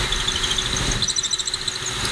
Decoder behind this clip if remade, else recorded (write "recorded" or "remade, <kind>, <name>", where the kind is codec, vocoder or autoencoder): recorded